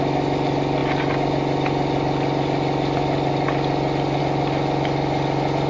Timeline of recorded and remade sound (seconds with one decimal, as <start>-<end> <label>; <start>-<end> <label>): 0.0-5.7 recorded